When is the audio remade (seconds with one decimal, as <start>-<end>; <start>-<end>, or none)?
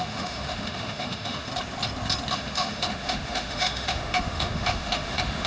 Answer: 0.0-1.5; 2.3-5.5